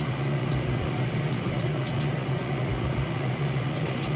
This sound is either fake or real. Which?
fake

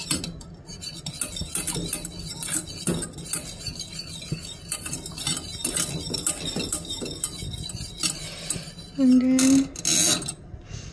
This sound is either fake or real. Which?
real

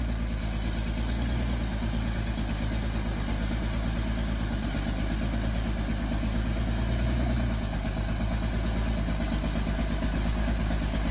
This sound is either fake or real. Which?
real